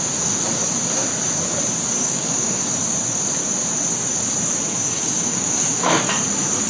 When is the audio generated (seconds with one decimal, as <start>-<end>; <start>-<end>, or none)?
2.0-2.7; 4.6-6.0